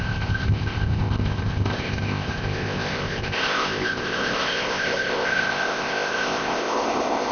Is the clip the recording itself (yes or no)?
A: no